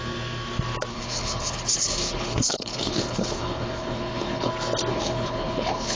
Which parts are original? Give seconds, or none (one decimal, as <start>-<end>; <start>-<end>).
0.0-0.9; 4.5-4.9